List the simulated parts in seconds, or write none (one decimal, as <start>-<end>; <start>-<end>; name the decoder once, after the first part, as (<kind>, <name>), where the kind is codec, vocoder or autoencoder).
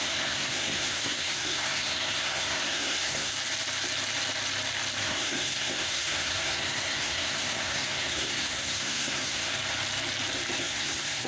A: 0.0-3.3 (codec, SNAC); 5.0-9.5; 10.6-11.3